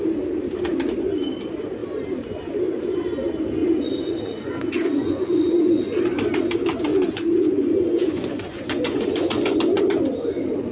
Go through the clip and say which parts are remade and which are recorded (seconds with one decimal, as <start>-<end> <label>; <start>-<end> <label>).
0.0-3.6 recorded; 3.6-5.8 remade; 5.8-6.9 recorded; 6.9-9.8 remade; 9.8-10.7 recorded